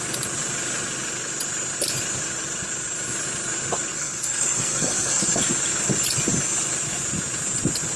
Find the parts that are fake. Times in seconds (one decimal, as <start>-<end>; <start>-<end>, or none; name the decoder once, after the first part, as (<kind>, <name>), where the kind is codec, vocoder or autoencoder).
3.9-5.4 (codec, SNAC)